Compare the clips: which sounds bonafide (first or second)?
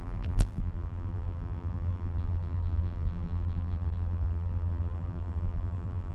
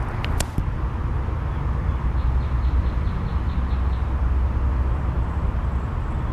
second